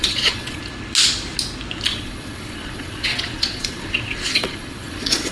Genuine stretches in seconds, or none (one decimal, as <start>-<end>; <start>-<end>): 0.6-1.9